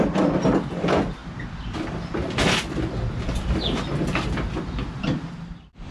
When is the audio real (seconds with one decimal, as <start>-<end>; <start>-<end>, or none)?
0.0-5.9